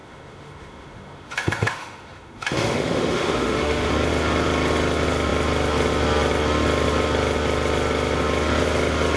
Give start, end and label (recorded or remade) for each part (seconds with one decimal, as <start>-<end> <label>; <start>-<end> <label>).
0.0-3.9 remade; 3.9-9.2 recorded